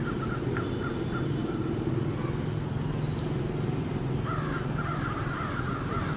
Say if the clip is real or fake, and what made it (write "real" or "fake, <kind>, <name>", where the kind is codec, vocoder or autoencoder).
real